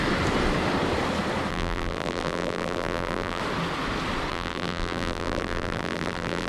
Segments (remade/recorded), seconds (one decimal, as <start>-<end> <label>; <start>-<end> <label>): 0.0-1.5 recorded; 1.5-3.4 remade; 3.4-4.3 recorded; 4.3-6.5 remade